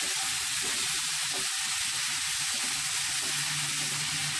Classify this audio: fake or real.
real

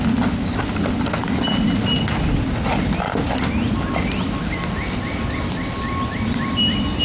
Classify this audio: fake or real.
real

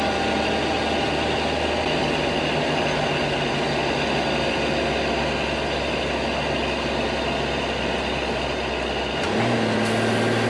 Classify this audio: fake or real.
real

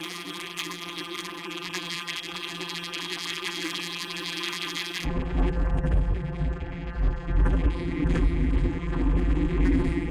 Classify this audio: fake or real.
fake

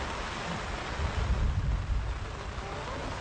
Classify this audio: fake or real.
real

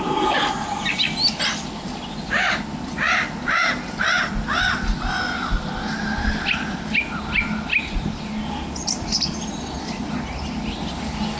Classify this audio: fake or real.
real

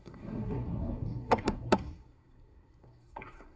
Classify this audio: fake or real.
fake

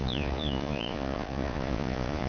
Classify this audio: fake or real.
fake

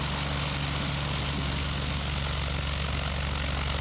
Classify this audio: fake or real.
real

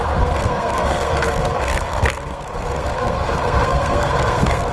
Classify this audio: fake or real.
fake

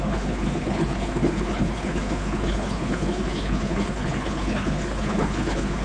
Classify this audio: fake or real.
fake